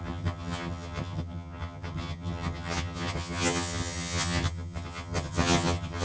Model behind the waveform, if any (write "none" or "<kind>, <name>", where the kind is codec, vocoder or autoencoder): vocoder, HiFi-GAN